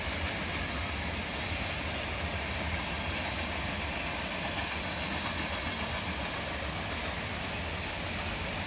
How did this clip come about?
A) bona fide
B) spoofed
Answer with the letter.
A